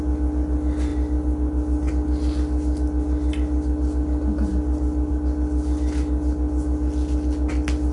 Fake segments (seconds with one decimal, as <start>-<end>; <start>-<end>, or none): none